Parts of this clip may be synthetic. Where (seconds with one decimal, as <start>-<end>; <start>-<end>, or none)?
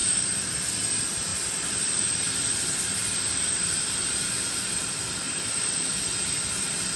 1.3-2.4; 3.0-5.1